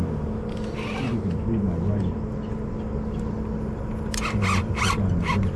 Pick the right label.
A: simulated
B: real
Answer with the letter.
B